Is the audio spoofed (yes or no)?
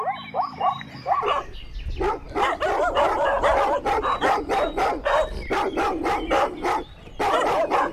no